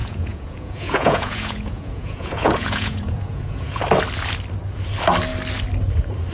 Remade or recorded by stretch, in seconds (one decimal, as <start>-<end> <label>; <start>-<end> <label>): 0.0-3.8 remade; 3.8-6.3 recorded